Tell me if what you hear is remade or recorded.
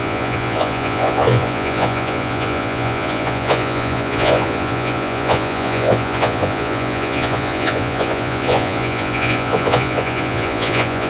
remade